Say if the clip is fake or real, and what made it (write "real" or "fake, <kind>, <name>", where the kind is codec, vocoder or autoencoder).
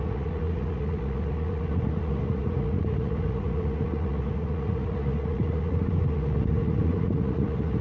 fake, vocoder, Vocos